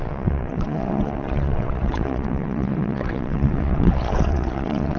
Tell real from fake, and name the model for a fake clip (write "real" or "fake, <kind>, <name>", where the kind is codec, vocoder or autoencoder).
fake, vocoder, WaveNeXt